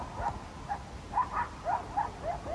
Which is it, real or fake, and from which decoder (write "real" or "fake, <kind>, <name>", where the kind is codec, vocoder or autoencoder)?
real